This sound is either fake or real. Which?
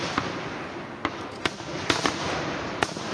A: real